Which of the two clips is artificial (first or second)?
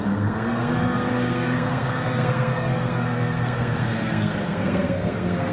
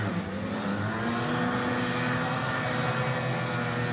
first